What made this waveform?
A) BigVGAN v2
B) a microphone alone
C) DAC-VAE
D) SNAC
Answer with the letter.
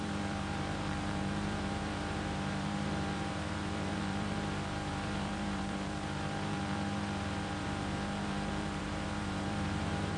A